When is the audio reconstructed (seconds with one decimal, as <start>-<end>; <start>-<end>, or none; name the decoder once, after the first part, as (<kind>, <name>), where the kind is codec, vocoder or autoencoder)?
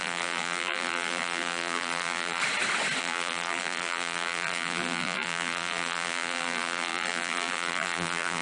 0.0-2.4 (vocoder, BigVGAN v2); 3.0-8.4